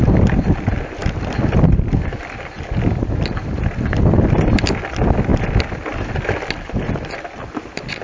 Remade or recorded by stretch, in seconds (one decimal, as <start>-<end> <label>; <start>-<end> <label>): 0.0-8.0 recorded